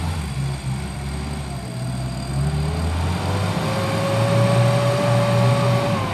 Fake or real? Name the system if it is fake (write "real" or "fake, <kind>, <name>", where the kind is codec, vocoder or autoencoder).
real